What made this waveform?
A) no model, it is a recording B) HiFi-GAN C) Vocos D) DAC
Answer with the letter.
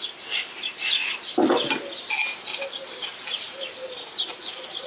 A